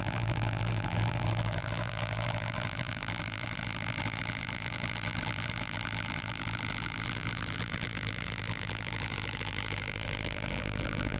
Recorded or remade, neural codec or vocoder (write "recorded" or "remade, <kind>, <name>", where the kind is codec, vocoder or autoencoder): remade, vocoder, BigVGAN v2